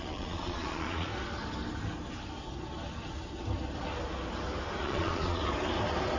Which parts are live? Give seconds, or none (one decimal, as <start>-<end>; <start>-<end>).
1.1-4.8; 5.4-6.2